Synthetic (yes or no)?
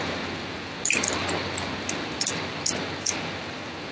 no